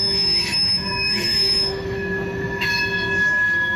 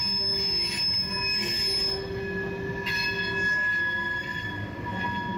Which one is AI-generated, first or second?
first